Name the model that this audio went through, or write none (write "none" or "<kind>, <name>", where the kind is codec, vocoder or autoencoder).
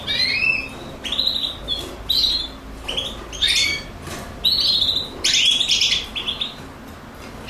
none